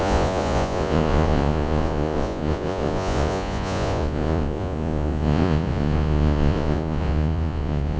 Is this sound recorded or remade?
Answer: remade